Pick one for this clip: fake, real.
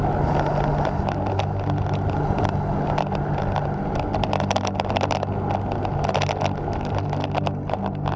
real